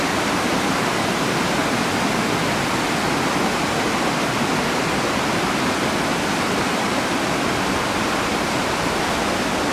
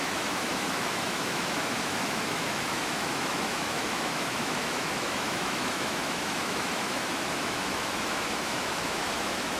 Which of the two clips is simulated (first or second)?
second